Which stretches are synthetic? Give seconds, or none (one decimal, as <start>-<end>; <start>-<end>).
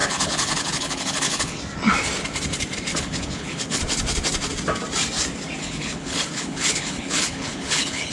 0.0-1.6; 2.9-3.8; 5.6-8.1